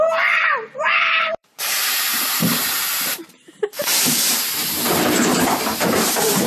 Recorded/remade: remade